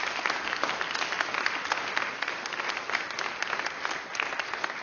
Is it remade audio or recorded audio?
recorded